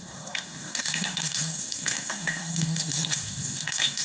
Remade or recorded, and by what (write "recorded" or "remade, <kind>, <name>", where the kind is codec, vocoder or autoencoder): remade, codec, SNAC